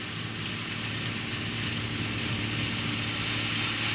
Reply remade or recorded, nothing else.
recorded